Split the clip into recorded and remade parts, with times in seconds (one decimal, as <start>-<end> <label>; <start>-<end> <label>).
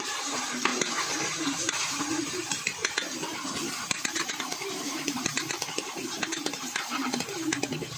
0.0-0.7 recorded; 0.7-2.0 remade; 2.0-2.8 recorded; 2.8-7.2 remade; 7.2-8.0 recorded